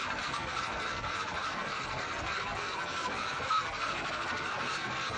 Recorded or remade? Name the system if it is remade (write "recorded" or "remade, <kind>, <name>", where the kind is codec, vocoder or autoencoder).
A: remade, codec, SNAC